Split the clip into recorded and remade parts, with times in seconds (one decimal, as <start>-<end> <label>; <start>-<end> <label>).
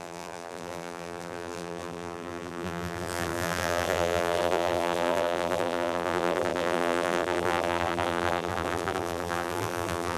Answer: 0.0-10.2 remade